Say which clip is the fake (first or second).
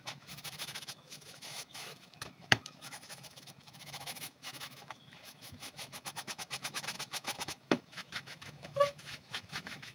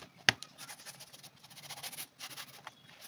first